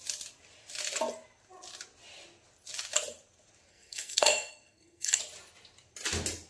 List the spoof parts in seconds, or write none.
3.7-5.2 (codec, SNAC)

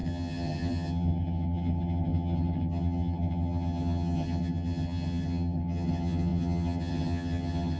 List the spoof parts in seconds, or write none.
0.0-7.8 (vocoder, HiFi-GAN)